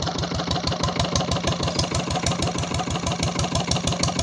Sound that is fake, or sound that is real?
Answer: real